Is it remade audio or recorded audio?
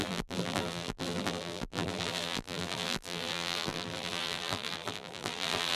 remade